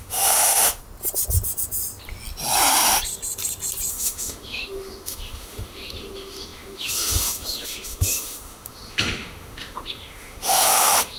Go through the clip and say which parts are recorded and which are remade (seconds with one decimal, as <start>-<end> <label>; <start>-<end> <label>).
0.0-0.8 remade; 0.8-3.9 recorded; 3.9-11.2 remade